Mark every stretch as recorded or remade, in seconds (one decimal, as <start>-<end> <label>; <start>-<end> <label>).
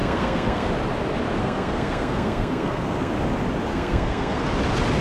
0.0-0.7 remade; 0.7-1.4 recorded; 1.4-3.1 remade; 3.1-3.7 recorded; 3.7-4.4 remade; 4.4-5.0 recorded